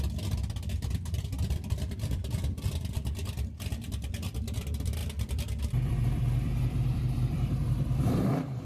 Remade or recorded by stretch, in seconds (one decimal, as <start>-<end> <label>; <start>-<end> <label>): 0.0-8.7 remade